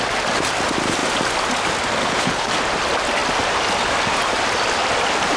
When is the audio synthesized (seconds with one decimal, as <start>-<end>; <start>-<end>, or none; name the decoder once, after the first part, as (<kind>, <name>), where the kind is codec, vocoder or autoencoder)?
2.0-2.5 (codec, HILCodec)